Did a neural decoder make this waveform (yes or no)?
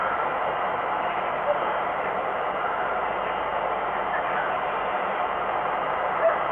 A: yes